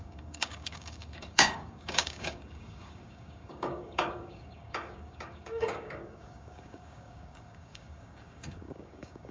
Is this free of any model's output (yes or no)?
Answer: no